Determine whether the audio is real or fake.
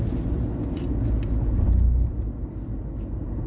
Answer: real